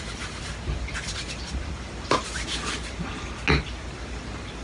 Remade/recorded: recorded